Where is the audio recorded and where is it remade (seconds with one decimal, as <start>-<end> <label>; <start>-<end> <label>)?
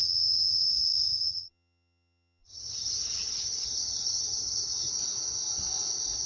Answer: 0.0-0.7 remade; 0.7-1.1 recorded; 1.1-4.9 remade; 4.9-6.3 recorded